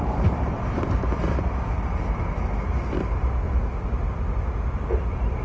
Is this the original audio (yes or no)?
yes